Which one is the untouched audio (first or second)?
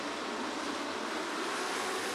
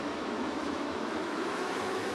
first